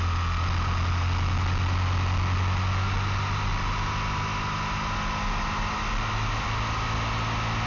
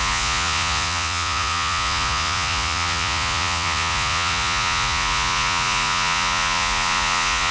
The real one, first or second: first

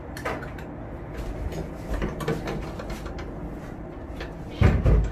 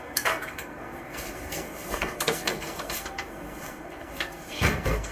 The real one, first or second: first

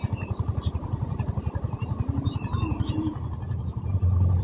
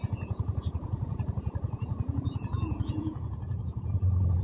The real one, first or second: first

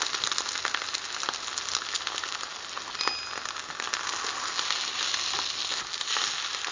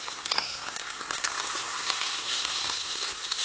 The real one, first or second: first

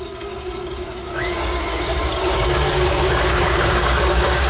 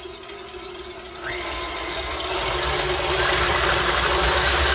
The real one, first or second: second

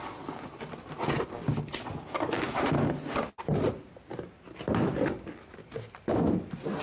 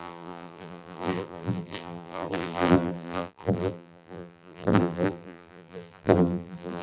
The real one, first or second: first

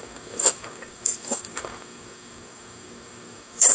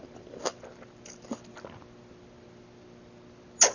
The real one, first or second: second